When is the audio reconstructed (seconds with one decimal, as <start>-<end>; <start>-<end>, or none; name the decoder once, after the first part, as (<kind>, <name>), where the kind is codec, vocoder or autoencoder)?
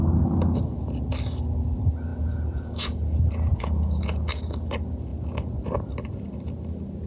2.1-4.4 (vocoder, Vocos)